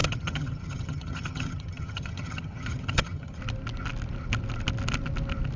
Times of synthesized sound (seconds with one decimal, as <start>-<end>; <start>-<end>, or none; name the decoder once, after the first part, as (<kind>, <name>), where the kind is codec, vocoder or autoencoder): 0.0-3.4 (vocoder, HiFi-GAN)